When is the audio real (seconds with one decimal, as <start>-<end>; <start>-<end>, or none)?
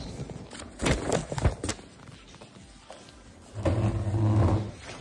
0.0-5.0